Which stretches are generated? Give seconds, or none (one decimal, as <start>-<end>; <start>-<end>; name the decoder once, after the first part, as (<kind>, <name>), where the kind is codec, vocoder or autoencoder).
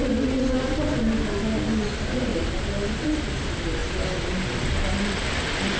none